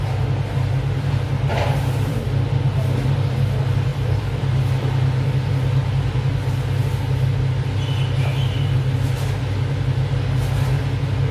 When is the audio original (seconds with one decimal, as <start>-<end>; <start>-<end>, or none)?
0.0-1.5; 2.6-3.9; 4.4-11.3